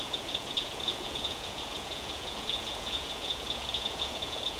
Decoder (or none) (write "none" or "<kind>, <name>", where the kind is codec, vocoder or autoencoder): vocoder, Vocos